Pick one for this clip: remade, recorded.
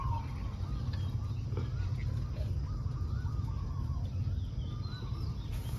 recorded